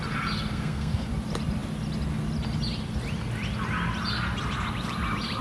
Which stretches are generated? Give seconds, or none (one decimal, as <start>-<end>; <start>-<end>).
0.5-1.1